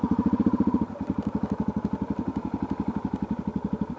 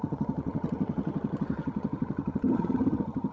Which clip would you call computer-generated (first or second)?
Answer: second